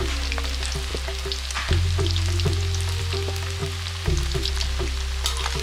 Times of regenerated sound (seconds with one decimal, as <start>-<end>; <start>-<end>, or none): none